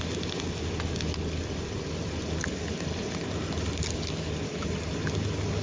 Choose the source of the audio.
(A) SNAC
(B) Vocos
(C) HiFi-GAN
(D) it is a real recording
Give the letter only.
D